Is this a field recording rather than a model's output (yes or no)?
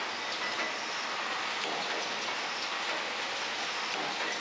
yes